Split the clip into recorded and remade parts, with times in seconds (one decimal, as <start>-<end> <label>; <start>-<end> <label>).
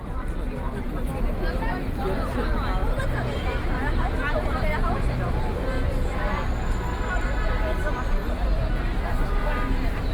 0.0-10.1 recorded